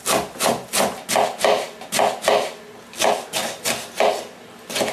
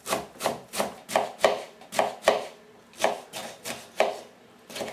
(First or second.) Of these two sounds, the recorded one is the first